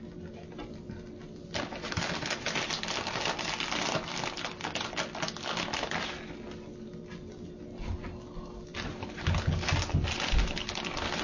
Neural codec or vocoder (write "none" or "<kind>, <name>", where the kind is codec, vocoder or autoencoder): none